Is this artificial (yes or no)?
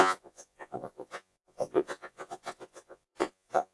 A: yes